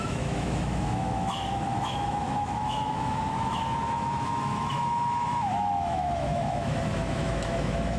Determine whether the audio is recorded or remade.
remade